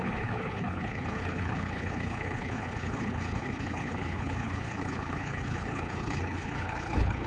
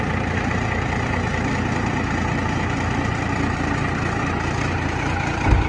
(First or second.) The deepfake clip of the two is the first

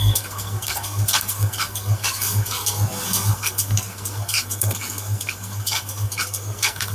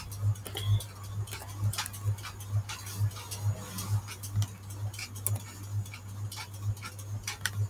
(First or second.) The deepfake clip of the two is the first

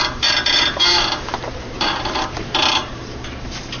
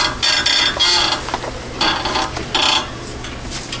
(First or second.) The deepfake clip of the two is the first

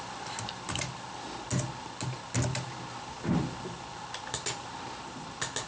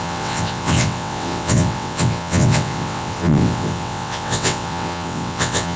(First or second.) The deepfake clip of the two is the second